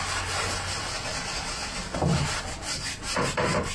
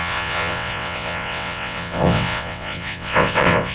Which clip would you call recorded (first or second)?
first